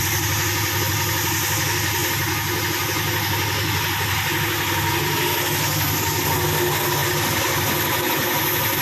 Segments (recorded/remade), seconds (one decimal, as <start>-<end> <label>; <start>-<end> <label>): 0.0-8.8 recorded